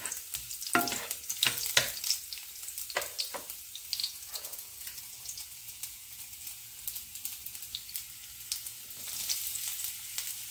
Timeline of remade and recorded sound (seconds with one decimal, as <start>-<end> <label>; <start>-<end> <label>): 0.0-4.0 recorded; 4.0-6.8 remade; 6.8-10.5 recorded